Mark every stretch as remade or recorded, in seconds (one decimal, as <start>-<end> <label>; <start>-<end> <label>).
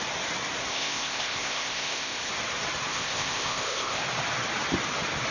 0.0-0.7 recorded; 0.7-2.3 remade; 2.3-2.9 recorded; 2.9-4.0 remade; 4.0-5.3 recorded